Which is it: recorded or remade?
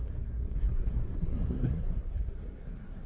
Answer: remade